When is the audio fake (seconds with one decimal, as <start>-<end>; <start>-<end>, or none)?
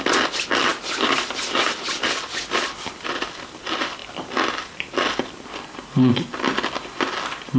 none